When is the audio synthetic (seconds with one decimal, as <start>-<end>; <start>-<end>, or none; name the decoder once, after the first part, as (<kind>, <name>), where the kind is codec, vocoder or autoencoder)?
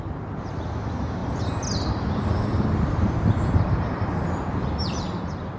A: 1.2-1.9 (vocoder, BigVGAN v2); 2.5-5.6